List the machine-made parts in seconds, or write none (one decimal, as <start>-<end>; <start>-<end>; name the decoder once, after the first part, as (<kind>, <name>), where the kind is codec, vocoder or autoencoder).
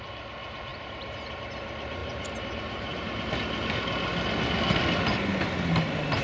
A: 0.7-1.3 (vocoder, BigVGAN v2); 2.0-3.3